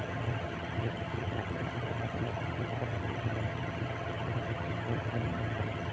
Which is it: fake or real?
fake